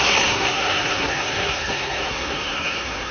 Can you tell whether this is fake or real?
fake